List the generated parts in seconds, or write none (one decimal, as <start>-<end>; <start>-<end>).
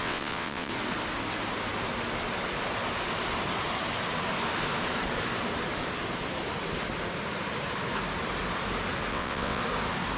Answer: 0.0-0.7; 9.1-9.6